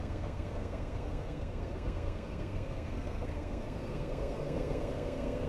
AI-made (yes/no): yes